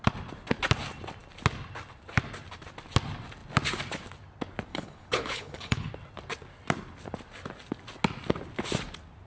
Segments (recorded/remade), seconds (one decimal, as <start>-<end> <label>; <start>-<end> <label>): 0.0-4.7 recorded; 4.7-5.9 remade; 5.9-9.3 recorded